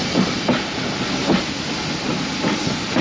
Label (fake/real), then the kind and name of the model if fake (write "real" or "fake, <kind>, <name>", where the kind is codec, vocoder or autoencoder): real